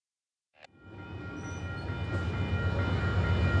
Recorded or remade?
recorded